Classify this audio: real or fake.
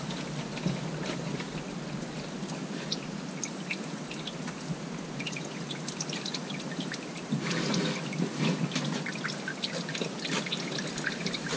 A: real